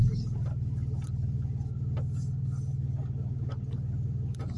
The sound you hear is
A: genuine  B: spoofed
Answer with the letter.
A